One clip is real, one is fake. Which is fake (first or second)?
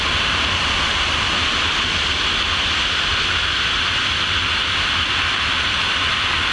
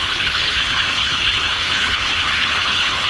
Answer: second